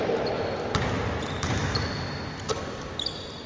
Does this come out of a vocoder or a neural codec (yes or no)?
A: no